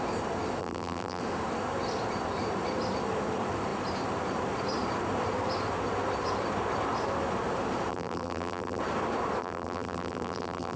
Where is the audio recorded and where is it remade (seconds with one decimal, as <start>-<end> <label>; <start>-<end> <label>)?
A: 0.0-0.6 recorded; 0.6-1.2 remade; 1.2-7.9 recorded; 7.9-8.8 remade; 8.8-9.4 recorded; 9.4-10.8 remade